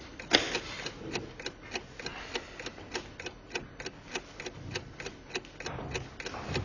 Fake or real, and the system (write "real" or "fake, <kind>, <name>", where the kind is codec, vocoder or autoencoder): real